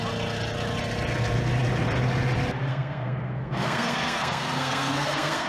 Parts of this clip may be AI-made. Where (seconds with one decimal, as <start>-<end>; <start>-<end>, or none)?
2.7-5.5

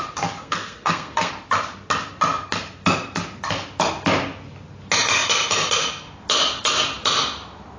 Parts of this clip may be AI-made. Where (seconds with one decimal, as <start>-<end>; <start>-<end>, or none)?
0.4-1.3